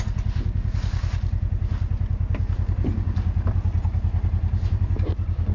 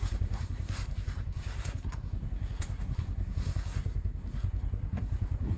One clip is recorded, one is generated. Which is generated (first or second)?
second